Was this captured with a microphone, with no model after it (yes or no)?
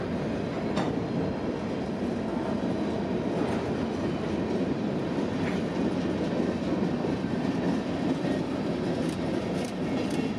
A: yes